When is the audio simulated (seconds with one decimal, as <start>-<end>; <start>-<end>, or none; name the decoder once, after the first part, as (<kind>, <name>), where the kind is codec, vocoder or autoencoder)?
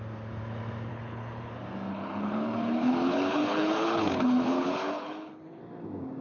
0.9-1.5 (codec, HILCodec); 1.9-5.6